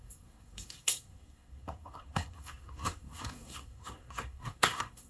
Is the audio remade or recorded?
remade